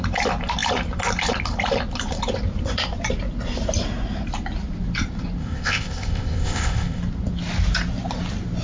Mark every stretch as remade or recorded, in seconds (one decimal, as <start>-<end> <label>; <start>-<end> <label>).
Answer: 0.0-5.4 recorded; 5.4-7.0 remade; 7.0-8.6 recorded